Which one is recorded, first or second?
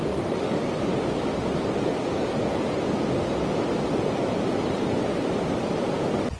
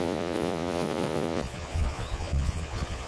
first